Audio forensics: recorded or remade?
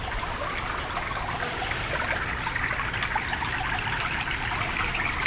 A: recorded